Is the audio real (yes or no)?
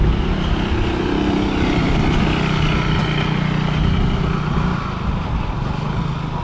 yes